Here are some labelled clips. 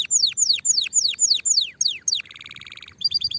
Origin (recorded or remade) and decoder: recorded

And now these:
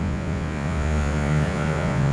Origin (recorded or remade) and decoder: remade, vocoder, Vocos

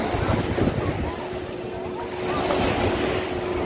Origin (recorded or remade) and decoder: recorded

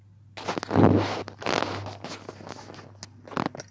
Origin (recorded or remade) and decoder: recorded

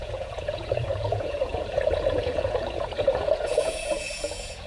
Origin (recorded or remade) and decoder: remade, vocoder, Vocos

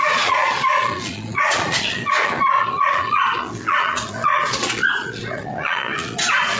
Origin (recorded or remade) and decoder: remade, vocoder, Vocos